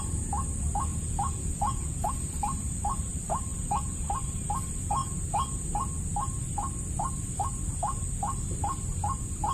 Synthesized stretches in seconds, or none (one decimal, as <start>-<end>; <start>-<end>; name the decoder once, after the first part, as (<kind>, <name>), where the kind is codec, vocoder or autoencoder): 0.9-2.1 (vocoder, Vocos); 3.5-4.0